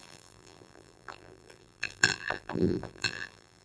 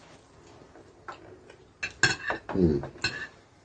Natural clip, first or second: second